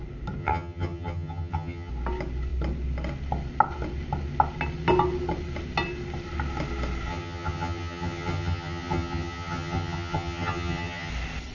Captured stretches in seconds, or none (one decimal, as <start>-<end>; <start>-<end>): 0.0-0.4; 1.9-7.1; 11.1-11.5